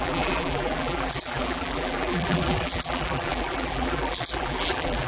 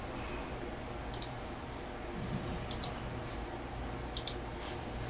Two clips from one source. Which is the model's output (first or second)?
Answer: first